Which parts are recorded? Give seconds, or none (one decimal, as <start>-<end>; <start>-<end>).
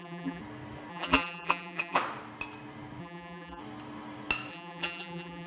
0.4-0.9; 2.0-3.0; 3.6-4.5